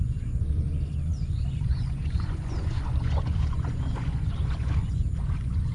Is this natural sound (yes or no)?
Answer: no